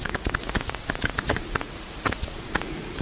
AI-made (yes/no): yes